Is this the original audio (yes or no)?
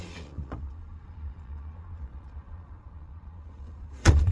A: no